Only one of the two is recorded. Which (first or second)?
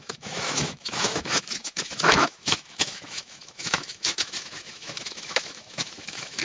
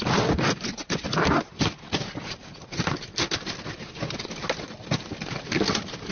second